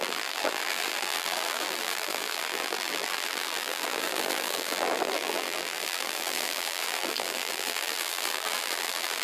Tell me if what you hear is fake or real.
fake